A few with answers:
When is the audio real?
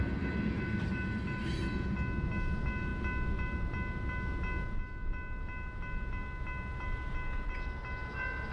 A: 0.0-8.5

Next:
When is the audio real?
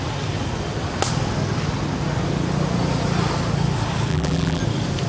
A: 0.0-4.1; 4.6-5.1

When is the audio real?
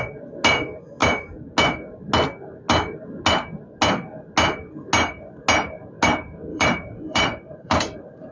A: 0.0-6.5